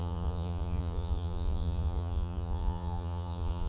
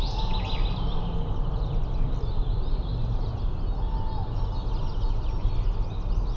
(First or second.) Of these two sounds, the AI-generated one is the first